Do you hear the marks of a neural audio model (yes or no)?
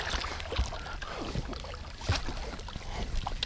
no